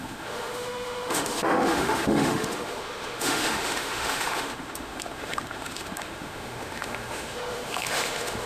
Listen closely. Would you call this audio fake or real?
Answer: fake